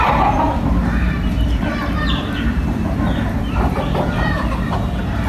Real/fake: fake